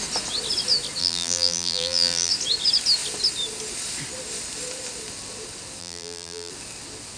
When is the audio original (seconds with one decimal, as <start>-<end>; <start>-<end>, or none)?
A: 0.0-1.0; 2.3-5.8; 6.5-7.2